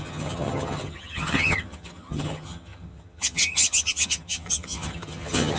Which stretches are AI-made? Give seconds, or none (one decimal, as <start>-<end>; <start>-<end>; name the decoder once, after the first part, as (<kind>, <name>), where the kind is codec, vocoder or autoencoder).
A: 0.0-5.6 (vocoder, HiFi-GAN)